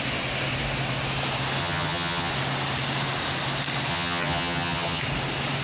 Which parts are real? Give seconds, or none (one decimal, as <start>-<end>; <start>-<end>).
0.0-1.6; 2.3-3.9; 5.0-5.6